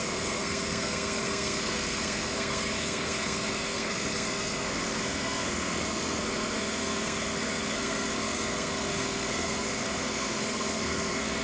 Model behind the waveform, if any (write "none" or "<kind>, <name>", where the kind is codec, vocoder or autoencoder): codec, SNAC